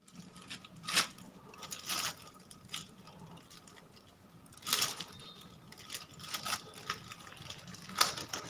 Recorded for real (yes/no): yes